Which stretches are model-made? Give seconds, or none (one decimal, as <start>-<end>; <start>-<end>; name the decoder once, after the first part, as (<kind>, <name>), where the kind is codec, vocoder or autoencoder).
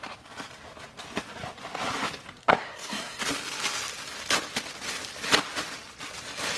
2.4-3.2 (codec, SNAC)